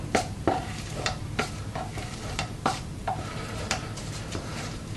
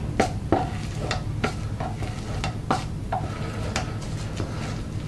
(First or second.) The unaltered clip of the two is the second